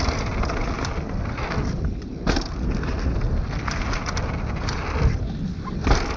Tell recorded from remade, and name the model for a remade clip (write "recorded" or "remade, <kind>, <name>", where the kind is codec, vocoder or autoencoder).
recorded